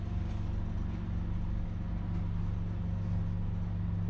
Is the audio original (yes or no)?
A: yes